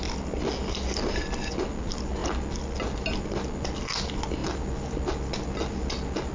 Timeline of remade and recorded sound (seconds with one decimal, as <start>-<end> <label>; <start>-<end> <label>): 0.0-6.3 recorded